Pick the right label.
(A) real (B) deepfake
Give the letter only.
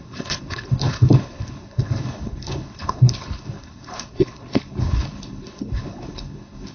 B